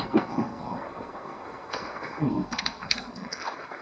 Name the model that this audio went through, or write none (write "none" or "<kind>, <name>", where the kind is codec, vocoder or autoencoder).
codec, SNAC